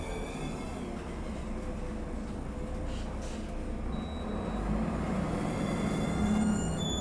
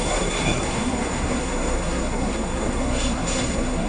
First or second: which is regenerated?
second